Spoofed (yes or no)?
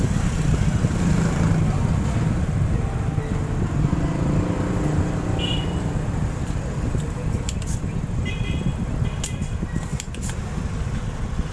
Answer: no